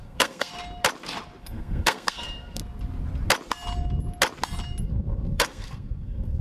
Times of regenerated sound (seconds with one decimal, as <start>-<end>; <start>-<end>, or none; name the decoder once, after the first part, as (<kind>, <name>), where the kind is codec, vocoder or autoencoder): 0.0-0.5 (codec, SNAC); 1.4-2.6; 4.8-6.4